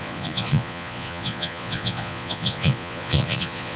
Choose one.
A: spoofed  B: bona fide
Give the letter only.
A